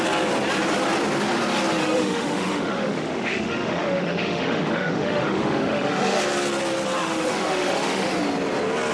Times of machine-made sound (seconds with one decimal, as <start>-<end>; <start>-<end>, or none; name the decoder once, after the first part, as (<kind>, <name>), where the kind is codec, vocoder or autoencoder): 1.8-6.2 (autoencoder, DAC-VAE); 7.0-8.1